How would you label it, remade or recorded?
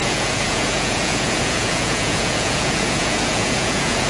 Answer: remade